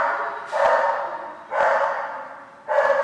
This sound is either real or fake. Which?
real